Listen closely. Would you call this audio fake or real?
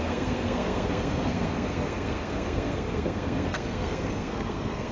fake